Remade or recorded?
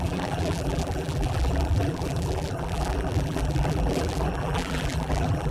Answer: remade